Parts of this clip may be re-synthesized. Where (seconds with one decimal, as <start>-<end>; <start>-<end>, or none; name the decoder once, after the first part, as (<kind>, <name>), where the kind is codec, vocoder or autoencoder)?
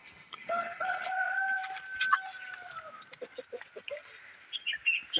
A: 0.0-1.1 (codec, HILCodec)